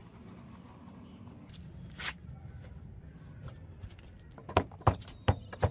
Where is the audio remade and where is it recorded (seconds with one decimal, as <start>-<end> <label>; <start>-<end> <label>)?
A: 0.0-5.7 recorded